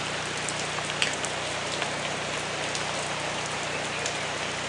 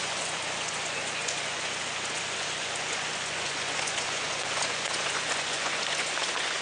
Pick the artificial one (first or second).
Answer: second